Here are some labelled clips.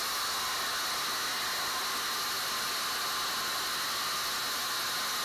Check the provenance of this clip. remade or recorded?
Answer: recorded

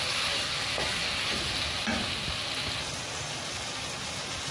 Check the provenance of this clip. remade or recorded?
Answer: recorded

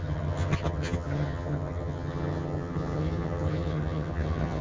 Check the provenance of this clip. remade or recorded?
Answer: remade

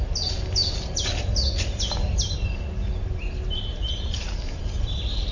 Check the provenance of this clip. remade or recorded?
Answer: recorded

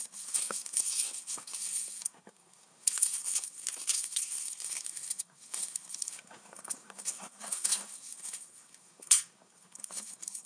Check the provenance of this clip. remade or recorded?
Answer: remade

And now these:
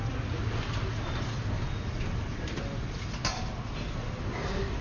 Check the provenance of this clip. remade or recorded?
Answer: recorded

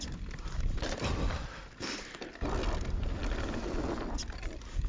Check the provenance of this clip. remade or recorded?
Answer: recorded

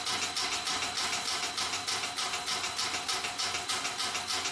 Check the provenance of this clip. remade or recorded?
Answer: recorded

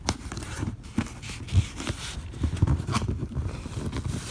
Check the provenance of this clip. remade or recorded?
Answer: recorded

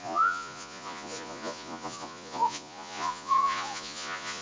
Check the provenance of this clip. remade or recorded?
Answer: remade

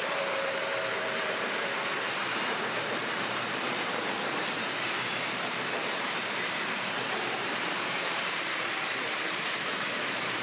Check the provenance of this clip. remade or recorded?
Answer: remade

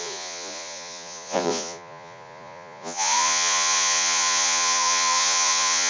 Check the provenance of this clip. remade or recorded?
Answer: remade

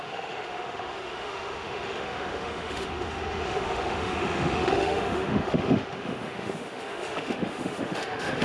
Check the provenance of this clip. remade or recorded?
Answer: remade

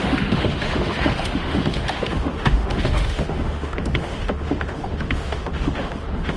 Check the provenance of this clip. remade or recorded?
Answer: remade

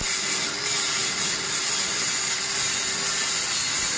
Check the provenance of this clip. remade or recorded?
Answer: recorded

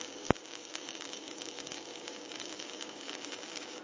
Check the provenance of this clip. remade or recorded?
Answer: remade